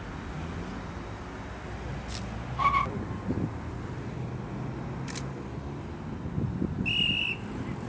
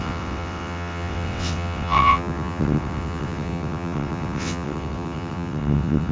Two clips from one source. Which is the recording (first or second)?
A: first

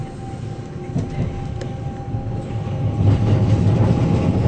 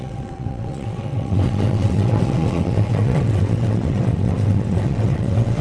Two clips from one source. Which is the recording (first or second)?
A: first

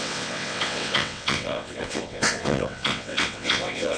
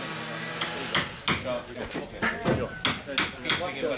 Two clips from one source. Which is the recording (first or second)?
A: second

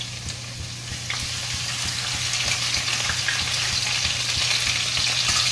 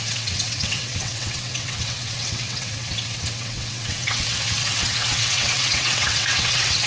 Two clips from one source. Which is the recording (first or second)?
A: first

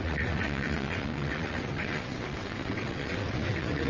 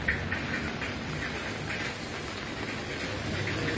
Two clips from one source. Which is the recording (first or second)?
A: second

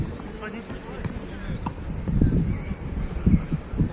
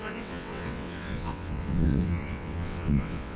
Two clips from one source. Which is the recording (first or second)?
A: first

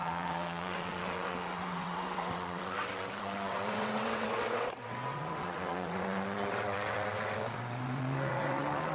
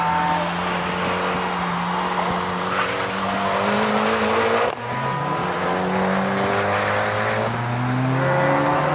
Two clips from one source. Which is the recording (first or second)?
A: second